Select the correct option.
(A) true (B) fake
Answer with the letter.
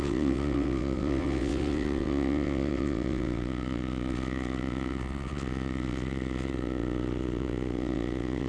B